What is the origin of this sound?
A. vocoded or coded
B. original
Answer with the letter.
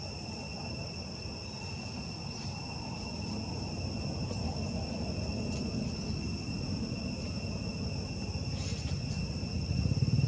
B